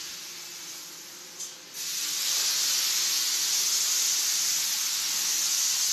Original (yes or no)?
yes